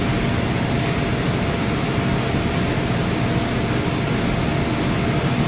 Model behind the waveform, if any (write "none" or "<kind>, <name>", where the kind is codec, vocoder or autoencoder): none